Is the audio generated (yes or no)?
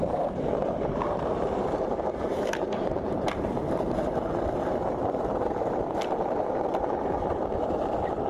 yes